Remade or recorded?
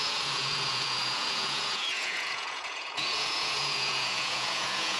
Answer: remade